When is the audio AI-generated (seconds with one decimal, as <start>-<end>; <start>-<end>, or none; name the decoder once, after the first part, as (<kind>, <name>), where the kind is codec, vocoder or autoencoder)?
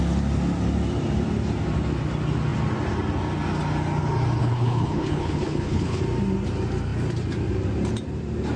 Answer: 4.4-6.0 (codec, HILCodec)